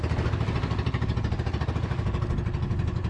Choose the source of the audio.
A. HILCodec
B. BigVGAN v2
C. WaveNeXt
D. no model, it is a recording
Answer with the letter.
D